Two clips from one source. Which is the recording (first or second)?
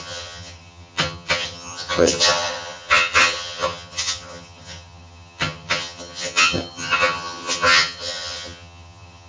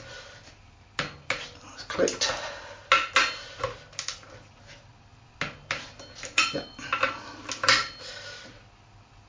second